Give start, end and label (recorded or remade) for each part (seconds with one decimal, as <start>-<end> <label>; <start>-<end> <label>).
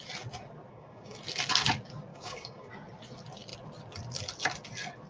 0.0-0.7 recorded; 0.7-1.2 remade; 1.2-2.1 recorded; 2.1-2.7 remade; 2.7-5.1 recorded